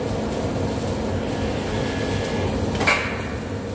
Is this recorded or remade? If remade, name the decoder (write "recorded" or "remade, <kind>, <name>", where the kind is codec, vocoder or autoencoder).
recorded